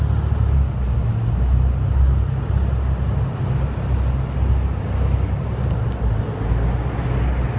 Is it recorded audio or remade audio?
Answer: recorded